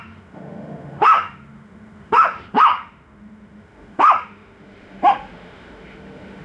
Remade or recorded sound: remade